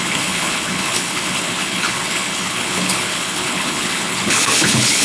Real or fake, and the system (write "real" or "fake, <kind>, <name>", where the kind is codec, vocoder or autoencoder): fake, codec, HILCodec